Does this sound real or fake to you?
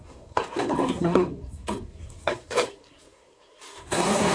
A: fake